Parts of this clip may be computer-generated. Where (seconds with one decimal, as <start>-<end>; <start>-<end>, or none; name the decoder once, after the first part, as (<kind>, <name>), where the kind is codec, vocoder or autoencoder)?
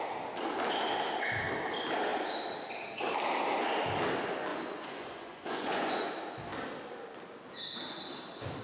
4.5-6.1 (vocoder, Vocos)